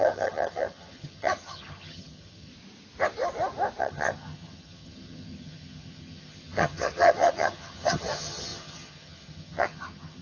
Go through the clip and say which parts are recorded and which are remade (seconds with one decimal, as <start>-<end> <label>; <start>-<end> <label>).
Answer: 0.0-2.5 remade; 2.5-3.8 recorded; 3.8-10.2 remade